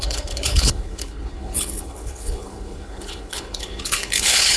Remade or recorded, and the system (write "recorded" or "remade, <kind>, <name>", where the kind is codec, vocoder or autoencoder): remade, codec, HILCodec